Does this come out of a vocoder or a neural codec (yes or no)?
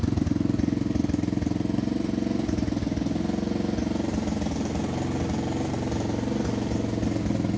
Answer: no